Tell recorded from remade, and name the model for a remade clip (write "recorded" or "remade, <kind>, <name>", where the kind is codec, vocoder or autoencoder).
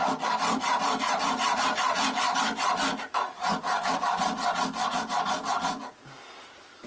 recorded